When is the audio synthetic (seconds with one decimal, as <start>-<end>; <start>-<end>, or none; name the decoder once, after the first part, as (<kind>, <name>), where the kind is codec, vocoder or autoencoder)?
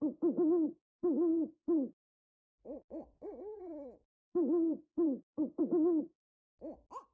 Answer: 0.0-6.2 (vocoder, WaveNeXt)